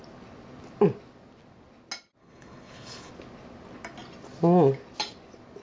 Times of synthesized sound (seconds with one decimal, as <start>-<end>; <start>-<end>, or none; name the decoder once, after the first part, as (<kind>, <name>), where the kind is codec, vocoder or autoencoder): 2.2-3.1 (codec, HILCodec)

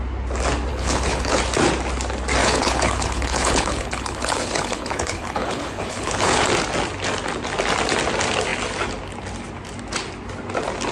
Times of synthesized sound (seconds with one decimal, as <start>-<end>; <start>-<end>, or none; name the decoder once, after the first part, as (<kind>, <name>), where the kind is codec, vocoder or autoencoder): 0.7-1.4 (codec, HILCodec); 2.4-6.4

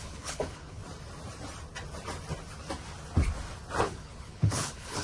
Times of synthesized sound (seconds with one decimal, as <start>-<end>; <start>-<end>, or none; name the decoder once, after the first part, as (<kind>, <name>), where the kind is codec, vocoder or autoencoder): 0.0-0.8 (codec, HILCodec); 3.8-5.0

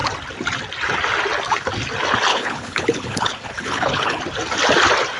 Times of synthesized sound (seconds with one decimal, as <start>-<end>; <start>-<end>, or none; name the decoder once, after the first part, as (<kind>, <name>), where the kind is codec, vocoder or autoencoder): 2.3-4.2 (codec, HILCodec)

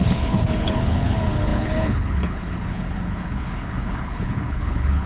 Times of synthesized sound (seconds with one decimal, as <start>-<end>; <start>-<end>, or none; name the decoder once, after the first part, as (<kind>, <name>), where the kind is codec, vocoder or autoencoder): 0.0-5.1 (codec, HILCodec)

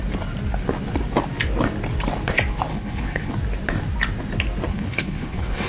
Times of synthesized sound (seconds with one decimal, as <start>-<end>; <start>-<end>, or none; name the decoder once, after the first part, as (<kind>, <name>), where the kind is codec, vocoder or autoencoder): 2.7-3.3 (codec, HILCodec); 4.7-5.7

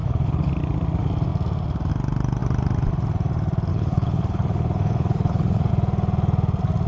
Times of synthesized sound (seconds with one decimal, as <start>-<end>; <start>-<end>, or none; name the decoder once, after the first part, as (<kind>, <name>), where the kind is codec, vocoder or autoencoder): 0.0-0.5 (codec, HILCodec); 3.7-5.7